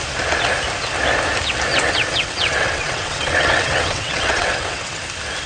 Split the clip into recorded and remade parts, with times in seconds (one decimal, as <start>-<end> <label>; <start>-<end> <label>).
0.0-1.7 recorded; 1.7-5.0 remade; 5.0-5.5 recorded